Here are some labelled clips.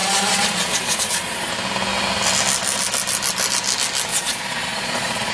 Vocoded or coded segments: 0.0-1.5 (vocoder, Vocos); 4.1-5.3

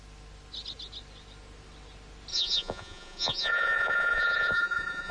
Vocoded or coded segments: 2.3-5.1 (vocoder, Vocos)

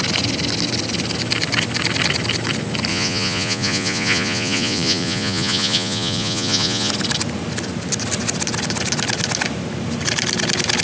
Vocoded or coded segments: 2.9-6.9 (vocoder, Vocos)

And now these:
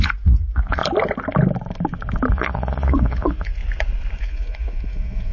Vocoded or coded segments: 0.0-0.8 (vocoder, Vocos); 2.3-3.6; 4.2-5.3